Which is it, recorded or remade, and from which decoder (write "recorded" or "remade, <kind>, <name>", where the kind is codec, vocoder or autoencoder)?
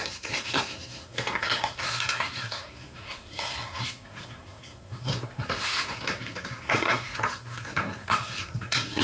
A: remade, codec, SNAC